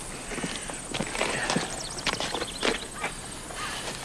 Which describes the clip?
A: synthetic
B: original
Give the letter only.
B